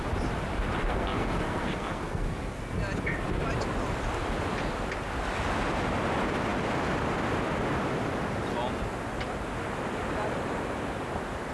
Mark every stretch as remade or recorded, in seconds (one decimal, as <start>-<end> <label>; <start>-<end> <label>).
0.0-0.8 recorded; 0.8-2.6 remade; 2.6-11.5 recorded